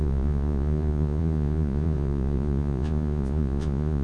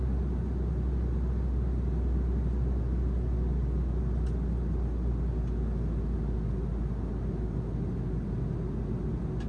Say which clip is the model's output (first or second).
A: first